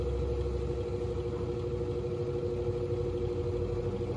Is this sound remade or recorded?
recorded